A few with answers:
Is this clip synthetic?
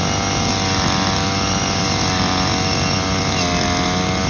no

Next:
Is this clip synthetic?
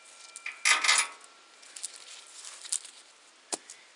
no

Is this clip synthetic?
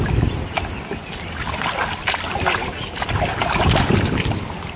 no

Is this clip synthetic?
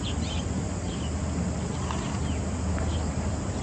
no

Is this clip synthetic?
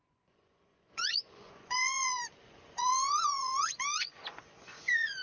yes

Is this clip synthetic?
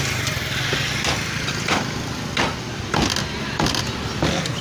no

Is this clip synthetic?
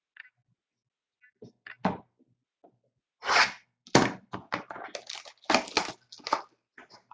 no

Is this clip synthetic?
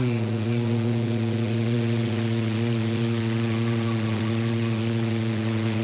yes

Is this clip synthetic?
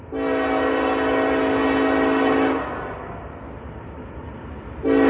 no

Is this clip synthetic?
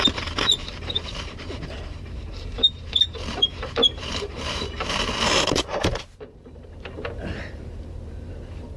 yes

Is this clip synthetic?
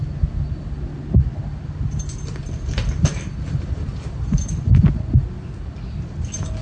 no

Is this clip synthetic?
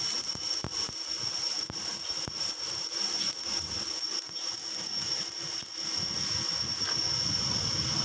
no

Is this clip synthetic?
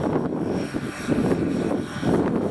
no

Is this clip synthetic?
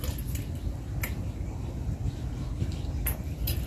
no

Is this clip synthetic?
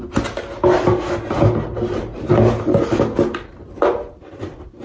no